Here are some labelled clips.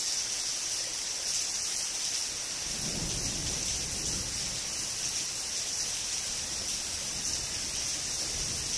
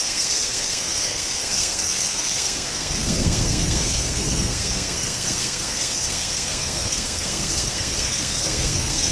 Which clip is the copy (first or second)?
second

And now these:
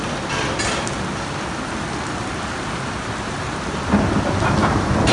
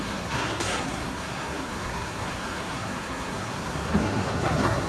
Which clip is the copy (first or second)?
second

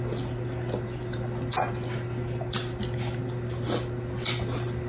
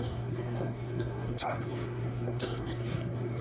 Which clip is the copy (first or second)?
second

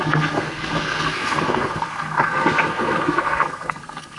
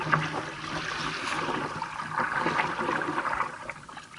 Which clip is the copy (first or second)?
first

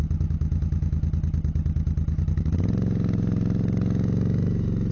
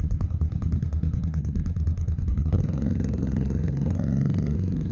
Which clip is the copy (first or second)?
second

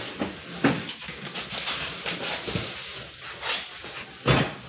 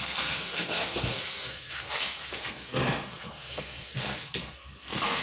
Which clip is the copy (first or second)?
second